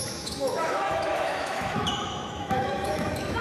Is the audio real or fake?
fake